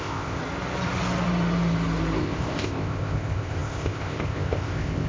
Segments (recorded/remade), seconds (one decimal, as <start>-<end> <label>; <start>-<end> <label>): 0.0-0.4 remade; 0.4-2.2 recorded; 2.2-5.1 remade